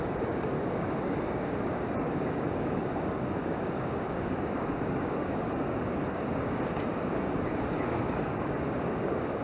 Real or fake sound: fake